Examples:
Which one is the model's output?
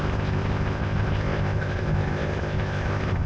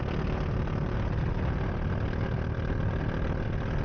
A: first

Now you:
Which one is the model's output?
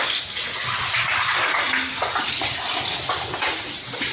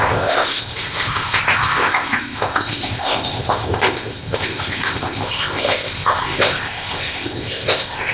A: second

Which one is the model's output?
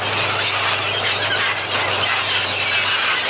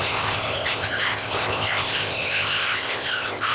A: second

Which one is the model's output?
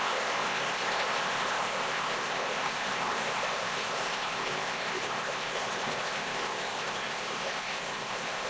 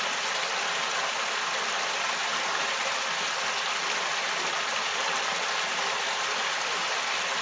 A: first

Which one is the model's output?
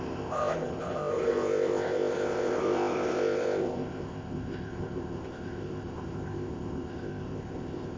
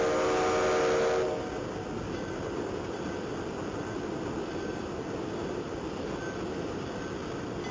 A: first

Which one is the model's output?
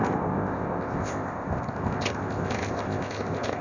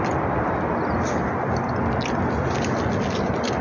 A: first